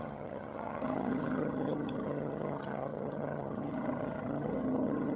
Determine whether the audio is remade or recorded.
remade